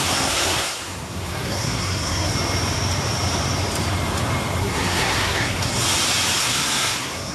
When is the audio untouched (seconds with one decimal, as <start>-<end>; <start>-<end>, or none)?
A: 2.3-4.6; 5.7-6.4